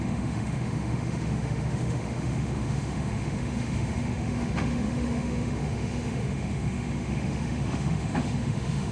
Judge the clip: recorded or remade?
remade